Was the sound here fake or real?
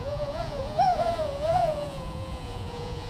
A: fake